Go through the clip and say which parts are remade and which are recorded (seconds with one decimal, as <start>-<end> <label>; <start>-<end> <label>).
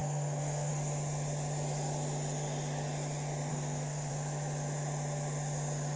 0.0-0.7 remade; 0.7-3.5 recorded; 3.5-4.1 remade; 4.1-6.0 recorded